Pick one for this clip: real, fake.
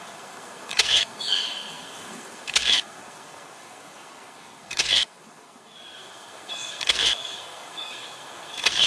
fake